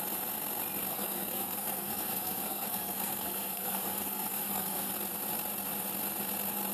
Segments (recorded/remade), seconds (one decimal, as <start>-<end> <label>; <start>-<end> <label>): 0.0-0.9 recorded; 0.9-4.9 remade; 4.9-6.7 recorded

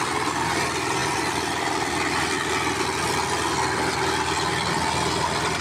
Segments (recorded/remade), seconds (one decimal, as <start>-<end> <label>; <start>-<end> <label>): 0.0-5.6 recorded

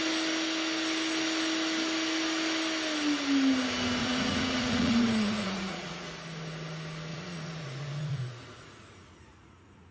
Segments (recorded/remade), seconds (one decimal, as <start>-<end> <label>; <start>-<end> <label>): 0.0-4.0 recorded; 4.0-6.1 remade; 6.1-7.1 recorded; 7.1-9.9 remade

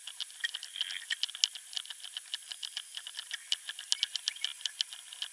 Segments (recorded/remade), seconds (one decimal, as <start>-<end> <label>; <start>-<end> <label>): 0.0-5.3 recorded

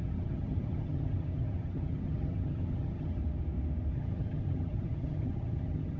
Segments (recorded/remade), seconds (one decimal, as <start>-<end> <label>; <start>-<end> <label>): 0.0-3.2 remade; 3.2-3.9 recorded; 3.9-6.0 remade